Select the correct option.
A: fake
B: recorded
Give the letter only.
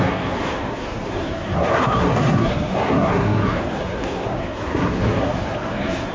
A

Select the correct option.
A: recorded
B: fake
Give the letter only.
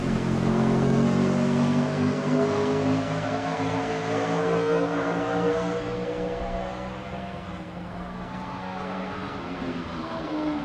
B